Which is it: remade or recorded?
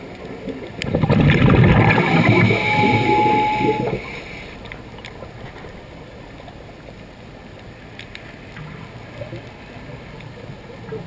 recorded